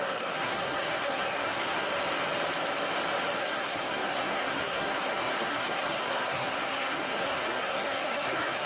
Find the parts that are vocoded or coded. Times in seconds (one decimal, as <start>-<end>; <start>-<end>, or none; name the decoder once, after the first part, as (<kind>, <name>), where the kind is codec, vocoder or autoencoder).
0.0-1.9 (codec, SNAC); 3.4-8.7